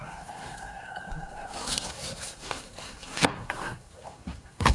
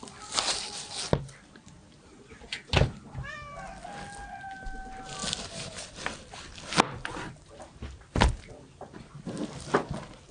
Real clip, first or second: second